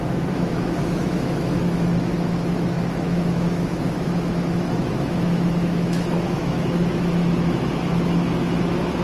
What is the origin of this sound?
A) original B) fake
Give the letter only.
B